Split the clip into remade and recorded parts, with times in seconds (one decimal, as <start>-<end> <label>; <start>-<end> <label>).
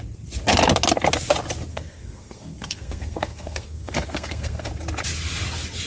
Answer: 0.0-1.7 recorded; 1.7-4.7 remade; 4.7-5.9 recorded